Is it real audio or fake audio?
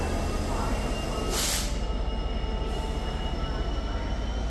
real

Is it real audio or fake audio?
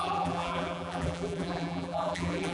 fake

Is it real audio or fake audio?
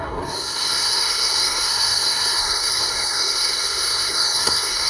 fake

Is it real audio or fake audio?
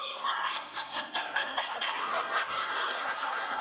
fake